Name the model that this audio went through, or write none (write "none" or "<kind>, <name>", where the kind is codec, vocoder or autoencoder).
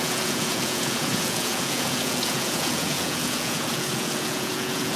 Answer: vocoder, Vocos